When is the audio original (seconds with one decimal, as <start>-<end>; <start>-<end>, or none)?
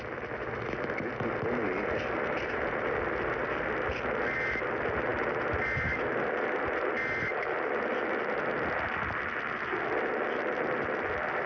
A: 0.0-11.5